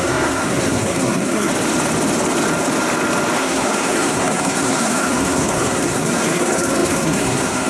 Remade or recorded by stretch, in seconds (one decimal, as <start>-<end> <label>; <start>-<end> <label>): 0.0-1.5 remade; 1.5-3.4 recorded; 3.4-7.7 remade